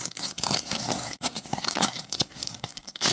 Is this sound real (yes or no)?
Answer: no